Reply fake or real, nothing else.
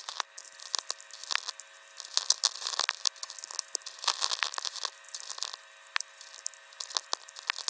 real